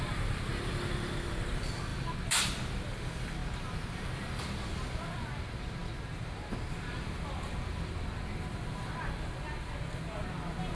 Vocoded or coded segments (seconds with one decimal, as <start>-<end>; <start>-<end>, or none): none